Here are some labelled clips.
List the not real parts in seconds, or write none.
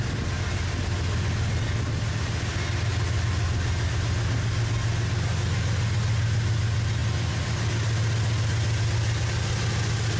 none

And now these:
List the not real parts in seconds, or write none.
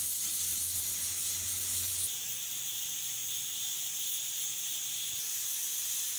0.0-0.5 (vocoder, BigVGAN v2); 1.3-6.2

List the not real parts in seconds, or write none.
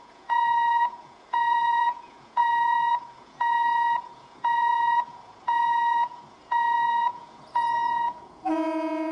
0.0-9.1 (vocoder, Vocos)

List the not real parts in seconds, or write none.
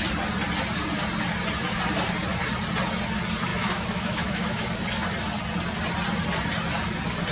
3.5-4.7 (autoencoder, DAC-VAE)